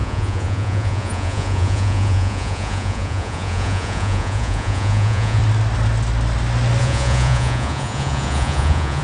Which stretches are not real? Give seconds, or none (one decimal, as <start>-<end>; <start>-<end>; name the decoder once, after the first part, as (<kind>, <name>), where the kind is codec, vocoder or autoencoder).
0.0-5.4 (vocoder, Vocos); 6.8-9.0